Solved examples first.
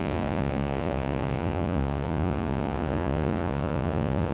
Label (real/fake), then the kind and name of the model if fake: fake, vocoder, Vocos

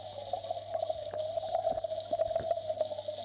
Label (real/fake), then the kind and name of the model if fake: real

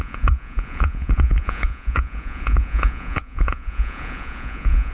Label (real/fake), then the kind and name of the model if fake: fake, vocoder, Vocos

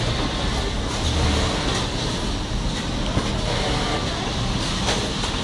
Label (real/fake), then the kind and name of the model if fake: real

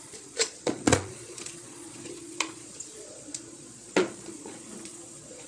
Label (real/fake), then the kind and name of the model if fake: fake, vocoder, Vocos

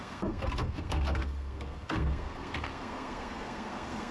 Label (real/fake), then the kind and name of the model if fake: fake, codec, SNAC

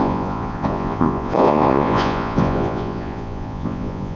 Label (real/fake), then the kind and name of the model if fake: fake, vocoder, Vocos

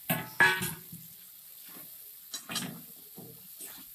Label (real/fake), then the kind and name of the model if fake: real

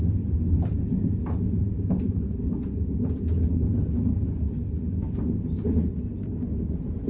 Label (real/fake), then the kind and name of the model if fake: real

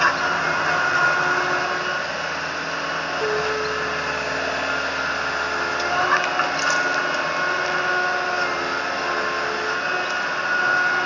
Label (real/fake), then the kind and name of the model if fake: real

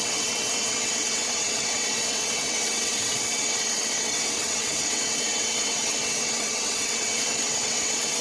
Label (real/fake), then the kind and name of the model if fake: fake, vocoder, WaveNeXt